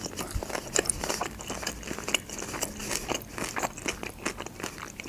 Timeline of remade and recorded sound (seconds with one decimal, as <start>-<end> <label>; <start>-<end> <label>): 0.0-5.1 recorded